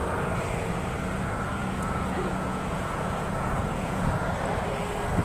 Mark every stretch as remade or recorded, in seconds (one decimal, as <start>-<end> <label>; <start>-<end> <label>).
0.0-1.6 recorded; 1.6-4.3 remade; 4.3-5.2 recorded